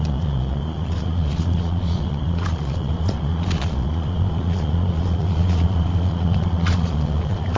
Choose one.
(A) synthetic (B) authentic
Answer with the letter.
A